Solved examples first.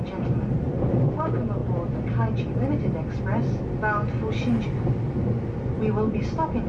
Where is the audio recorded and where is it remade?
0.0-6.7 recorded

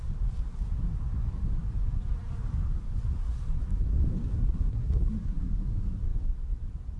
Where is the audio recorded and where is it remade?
0.0-4.4 recorded; 4.4-5.5 remade; 5.5-7.0 recorded

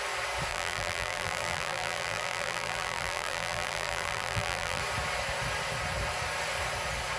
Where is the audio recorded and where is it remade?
0.0-0.5 recorded; 0.5-4.8 remade; 4.8-7.2 recorded

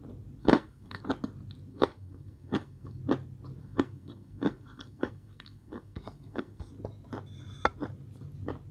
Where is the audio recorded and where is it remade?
0.0-0.4 recorded; 0.4-1.0 remade; 1.0-1.7 recorded; 1.7-3.0 remade; 3.0-3.6 recorded; 3.6-6.7 remade; 6.7-8.7 recorded

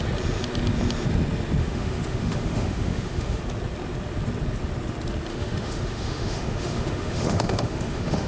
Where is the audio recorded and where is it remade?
0.0-1.6 recorded; 1.6-3.4 remade; 3.4-5.3 recorded; 5.3-8.3 remade

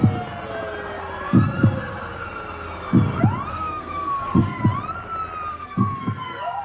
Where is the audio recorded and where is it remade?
0.0-3.5 recorded; 3.5-4.6 remade; 4.6-5.5 recorded; 5.5-6.6 remade

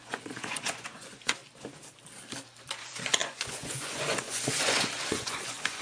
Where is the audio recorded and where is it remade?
0.0-1.4 remade; 1.4-2.8 recorded; 2.8-5.8 remade